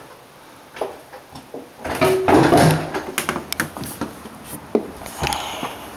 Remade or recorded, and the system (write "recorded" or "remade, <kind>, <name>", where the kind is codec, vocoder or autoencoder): recorded